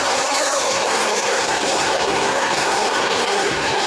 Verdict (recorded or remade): remade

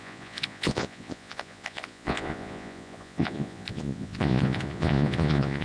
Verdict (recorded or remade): remade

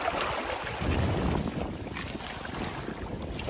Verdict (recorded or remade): recorded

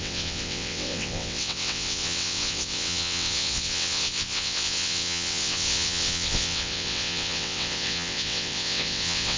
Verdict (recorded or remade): remade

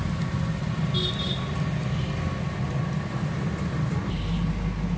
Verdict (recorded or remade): recorded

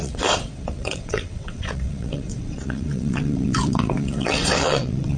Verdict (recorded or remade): remade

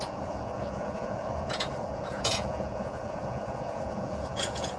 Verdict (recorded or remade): remade